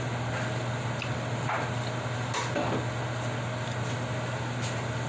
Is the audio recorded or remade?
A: recorded